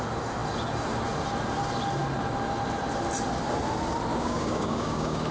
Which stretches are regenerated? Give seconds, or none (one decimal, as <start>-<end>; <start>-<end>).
4.1-5.3